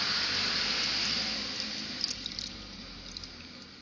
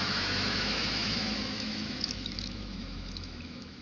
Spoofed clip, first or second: second